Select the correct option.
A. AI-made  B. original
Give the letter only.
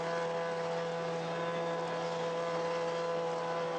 B